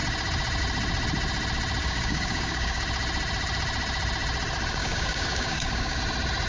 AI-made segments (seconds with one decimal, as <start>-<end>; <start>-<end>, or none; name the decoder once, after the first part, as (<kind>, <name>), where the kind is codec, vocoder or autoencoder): 1.8-2.8 (codec, DAC); 4.8-6.0